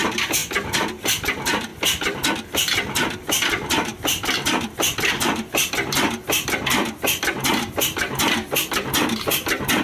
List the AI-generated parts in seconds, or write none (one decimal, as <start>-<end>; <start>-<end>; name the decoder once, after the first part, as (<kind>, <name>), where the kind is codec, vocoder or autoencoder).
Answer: 3.9-7.3 (vocoder, BigVGAN v2)